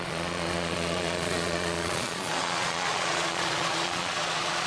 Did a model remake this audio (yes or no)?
yes